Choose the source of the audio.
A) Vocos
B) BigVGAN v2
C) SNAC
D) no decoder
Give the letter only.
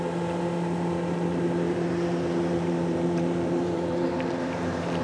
B